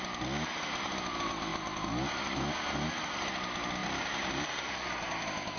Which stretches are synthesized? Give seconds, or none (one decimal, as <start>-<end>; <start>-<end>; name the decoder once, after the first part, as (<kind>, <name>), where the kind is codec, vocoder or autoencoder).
3.8-4.4 (vocoder, BigVGAN v2)